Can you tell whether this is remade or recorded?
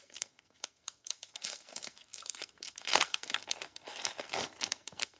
remade